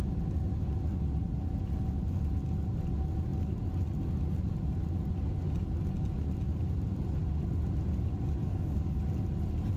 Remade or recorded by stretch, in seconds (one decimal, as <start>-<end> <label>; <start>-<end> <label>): 0.0-8.4 recorded; 8.4-9.0 remade; 9.0-9.8 recorded